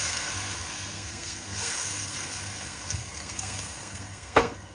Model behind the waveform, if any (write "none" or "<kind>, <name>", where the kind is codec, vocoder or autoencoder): codec, SNAC